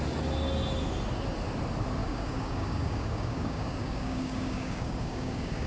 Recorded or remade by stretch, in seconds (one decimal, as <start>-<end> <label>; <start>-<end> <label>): 0.0-2.0 recorded; 2.0-5.7 remade